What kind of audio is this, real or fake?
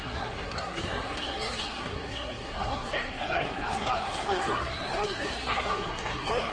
fake